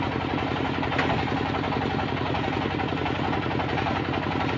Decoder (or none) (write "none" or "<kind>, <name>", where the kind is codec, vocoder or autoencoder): none